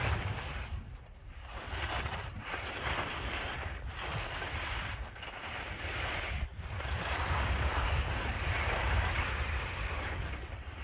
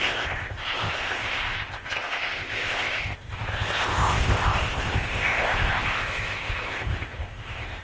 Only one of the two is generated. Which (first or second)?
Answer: second